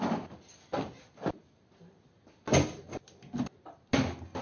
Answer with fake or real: real